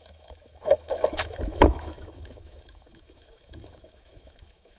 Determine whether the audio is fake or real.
fake